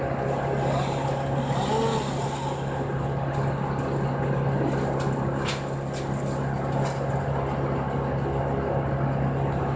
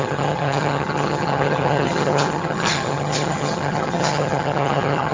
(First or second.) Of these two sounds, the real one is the first